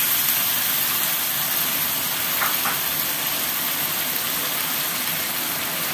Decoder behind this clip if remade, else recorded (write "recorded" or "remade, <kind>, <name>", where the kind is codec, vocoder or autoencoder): recorded